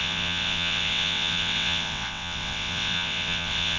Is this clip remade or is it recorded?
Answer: remade